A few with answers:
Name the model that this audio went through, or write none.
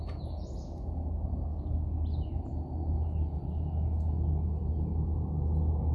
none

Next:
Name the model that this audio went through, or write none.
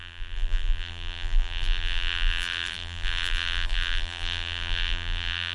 vocoder, BigVGAN v2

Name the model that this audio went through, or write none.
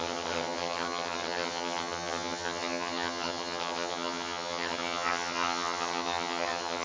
vocoder, HiFi-GAN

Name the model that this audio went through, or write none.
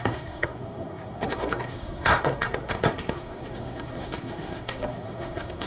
codec, SNAC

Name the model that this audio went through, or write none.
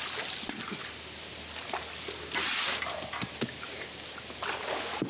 none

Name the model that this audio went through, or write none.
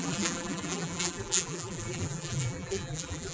vocoder, BigVGAN v2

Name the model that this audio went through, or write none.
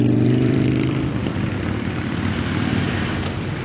vocoder, BigVGAN v2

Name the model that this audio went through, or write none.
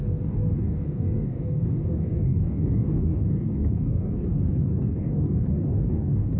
codec, DAC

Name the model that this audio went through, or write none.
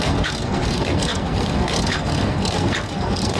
codec, SNAC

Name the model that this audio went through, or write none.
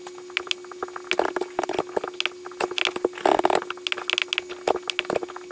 none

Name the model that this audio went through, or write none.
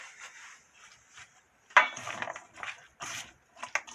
none